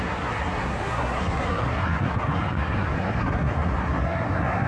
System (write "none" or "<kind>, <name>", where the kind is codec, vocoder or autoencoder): codec, SNAC